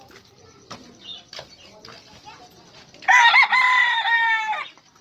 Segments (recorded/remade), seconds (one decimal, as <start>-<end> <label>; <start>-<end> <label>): 0.0-1.1 remade; 1.1-4.1 recorded; 4.1-5.0 remade